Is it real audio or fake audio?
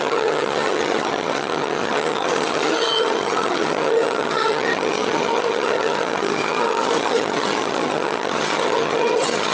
fake